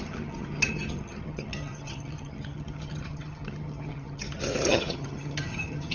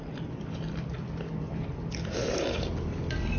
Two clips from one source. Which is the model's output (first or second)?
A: first